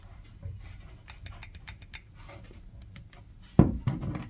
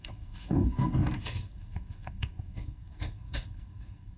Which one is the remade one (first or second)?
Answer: second